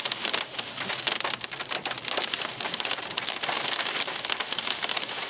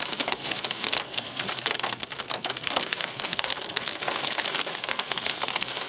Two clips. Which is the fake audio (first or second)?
second